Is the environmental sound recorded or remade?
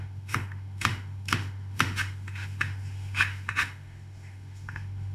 remade